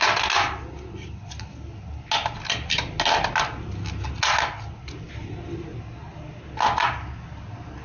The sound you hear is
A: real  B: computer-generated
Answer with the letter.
A